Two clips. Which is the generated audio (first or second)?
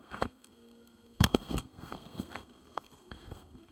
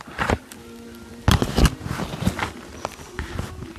first